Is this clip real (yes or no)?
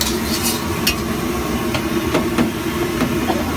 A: yes